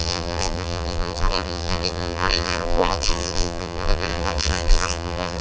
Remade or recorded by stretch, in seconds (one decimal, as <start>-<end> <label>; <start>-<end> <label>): 0.0-5.4 remade